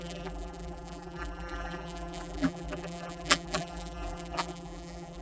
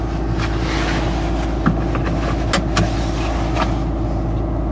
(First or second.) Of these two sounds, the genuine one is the second